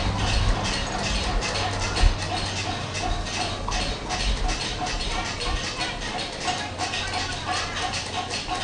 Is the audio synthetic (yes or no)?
no